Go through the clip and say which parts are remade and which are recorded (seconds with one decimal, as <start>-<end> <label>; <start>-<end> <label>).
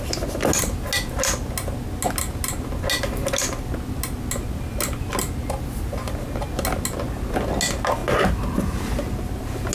0.0-9.7 recorded